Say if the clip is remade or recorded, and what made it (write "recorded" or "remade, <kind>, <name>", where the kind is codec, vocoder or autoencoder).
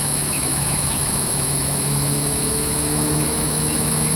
remade, autoencoder, DAC-VAE